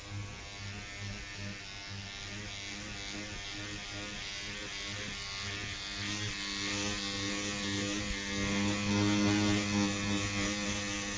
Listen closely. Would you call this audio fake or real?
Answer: real